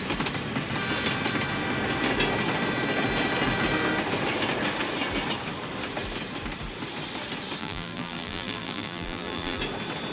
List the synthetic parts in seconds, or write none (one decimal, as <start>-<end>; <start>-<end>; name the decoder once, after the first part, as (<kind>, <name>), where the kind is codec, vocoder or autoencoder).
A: 7.6-9.6 (vocoder, BigVGAN v2)